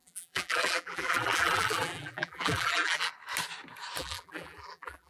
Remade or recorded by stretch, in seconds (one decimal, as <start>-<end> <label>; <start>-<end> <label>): 0.0-3.1 remade; 3.1-4.0 recorded; 4.0-5.1 remade